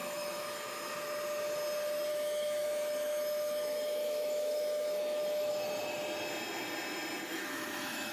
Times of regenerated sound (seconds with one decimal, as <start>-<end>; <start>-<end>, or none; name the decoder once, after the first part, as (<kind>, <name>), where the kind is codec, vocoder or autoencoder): 0.0-0.6 (autoencoder, DAC-VAE); 2.1-5.5; 7.3-8.1